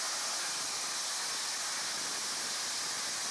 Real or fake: real